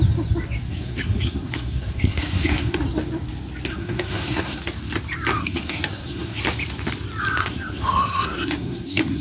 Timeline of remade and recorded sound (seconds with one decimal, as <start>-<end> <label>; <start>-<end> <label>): 0.0-0.7 recorded; 0.7-2.8 remade; 2.8-3.7 recorded; 3.7-4.6 remade; 4.6-5.4 recorded; 5.4-6.4 remade; 6.4-7.4 recorded; 7.4-9.2 remade